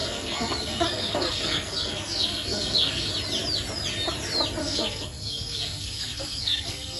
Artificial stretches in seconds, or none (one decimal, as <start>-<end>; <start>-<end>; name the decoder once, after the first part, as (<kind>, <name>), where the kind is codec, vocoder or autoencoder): 0.0-3.1 (codec, SNAC); 4.6-7.0